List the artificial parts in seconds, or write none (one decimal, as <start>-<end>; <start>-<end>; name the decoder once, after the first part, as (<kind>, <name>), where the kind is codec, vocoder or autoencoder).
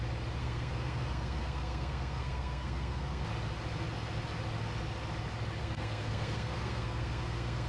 0.4-3.2 (codec, SNAC); 5.6-7.7